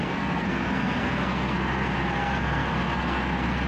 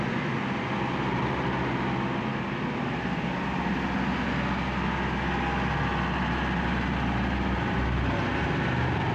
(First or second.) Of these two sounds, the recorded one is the second